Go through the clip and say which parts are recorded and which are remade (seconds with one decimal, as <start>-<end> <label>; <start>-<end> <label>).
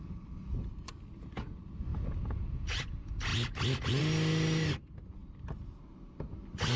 0.0-1.9 recorded; 1.9-2.8 remade; 2.8-6.8 recorded